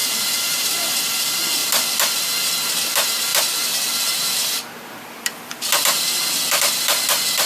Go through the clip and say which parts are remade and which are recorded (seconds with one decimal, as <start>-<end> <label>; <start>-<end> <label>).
0.0-7.5 recorded